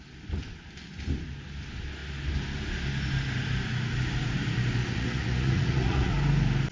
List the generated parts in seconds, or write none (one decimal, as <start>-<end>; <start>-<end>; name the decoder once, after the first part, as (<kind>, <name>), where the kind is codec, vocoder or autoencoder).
4.8-6.1 (vocoder, Vocos)